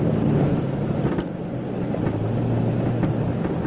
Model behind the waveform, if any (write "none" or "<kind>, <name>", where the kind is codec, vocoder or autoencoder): none